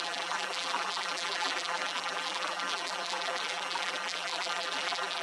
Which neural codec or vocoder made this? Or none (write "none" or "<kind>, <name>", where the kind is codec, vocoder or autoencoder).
vocoder, BigVGAN v2